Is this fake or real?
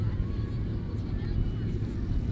fake